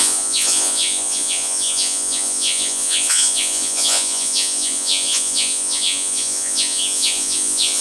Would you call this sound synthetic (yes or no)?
yes